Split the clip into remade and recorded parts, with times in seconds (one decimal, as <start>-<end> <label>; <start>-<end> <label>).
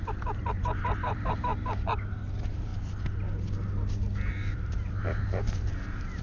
0.0-1.5 remade; 1.5-2.3 recorded; 2.3-2.7 remade; 2.7-4.3 recorded; 4.3-6.2 remade